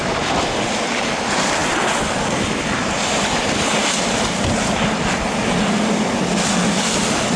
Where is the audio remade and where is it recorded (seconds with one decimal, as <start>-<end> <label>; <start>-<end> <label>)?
0.0-7.4 recorded

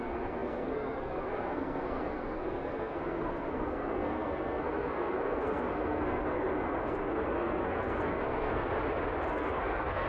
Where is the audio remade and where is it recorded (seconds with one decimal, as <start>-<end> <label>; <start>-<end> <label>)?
0.0-8.7 remade; 8.7-9.3 recorded; 9.3-10.1 remade

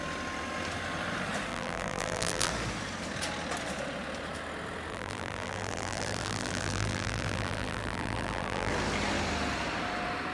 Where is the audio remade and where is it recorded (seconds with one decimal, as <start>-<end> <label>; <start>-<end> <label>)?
0.0-1.5 recorded; 1.5-2.5 remade; 2.5-4.9 recorded; 4.9-8.7 remade; 8.7-10.3 recorded

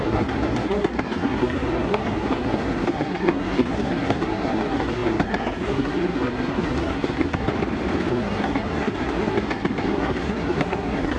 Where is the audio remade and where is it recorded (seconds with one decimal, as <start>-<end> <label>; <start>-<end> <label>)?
0.0-7.5 remade; 7.5-8.1 recorded; 8.1-11.2 remade

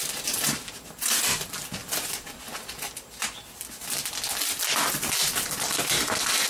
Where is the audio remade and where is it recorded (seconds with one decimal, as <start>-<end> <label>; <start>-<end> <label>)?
0.0-6.5 recorded

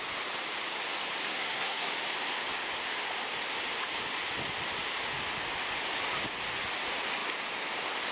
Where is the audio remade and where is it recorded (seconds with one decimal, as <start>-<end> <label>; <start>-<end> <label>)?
0.0-1.3 recorded; 1.3-1.9 remade; 1.9-8.1 recorded

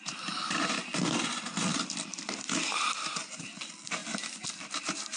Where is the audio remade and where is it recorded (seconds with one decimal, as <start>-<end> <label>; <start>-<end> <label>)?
0.0-0.9 remade; 0.9-1.5 recorded; 1.5-5.2 remade

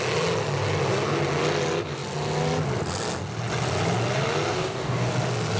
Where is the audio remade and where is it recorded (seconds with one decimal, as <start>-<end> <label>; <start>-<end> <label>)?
0.0-4.5 recorded; 4.5-5.1 remade; 5.1-5.6 recorded